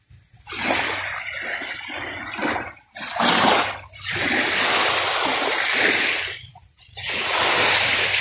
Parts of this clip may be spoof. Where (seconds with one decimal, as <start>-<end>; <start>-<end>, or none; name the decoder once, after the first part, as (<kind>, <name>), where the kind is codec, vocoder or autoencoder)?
6.5-7.4 (vocoder, Vocos)